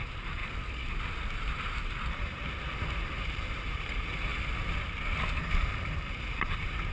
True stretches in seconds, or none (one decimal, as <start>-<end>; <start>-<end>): 0.4-2.1; 4.3-5.4